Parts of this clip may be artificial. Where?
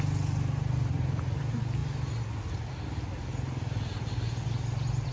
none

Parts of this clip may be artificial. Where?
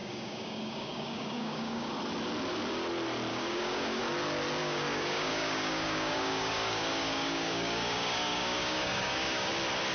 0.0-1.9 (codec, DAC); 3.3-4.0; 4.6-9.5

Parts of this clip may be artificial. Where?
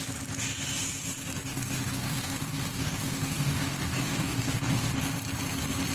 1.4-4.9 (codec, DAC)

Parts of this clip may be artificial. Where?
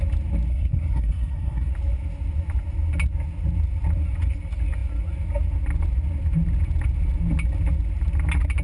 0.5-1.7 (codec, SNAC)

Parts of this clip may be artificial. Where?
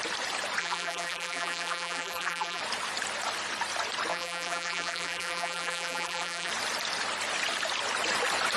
0.6-2.6 (vocoder, BigVGAN v2); 4.1-6.5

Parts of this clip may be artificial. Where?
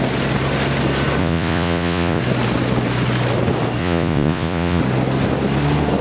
1.2-2.2 (vocoder, Vocos); 3.8-4.8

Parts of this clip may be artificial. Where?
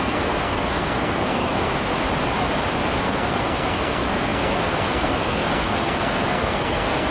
0.0-1.9 (codec, SNAC); 3.0-7.1